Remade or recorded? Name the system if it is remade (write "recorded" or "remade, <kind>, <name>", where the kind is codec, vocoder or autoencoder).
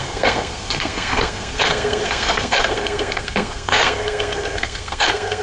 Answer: remade, codec, SNAC